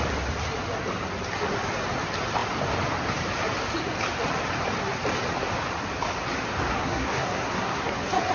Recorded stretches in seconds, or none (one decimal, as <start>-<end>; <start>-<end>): 0.0-6.7; 7.9-8.3